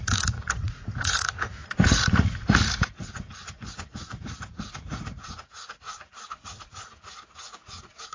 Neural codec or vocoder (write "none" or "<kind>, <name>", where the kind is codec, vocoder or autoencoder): vocoder, Vocos